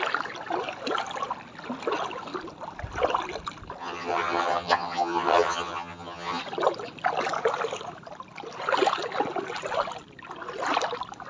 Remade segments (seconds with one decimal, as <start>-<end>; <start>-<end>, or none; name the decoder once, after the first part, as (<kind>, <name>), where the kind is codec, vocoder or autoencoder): 3.8-6.4 (vocoder, HiFi-GAN)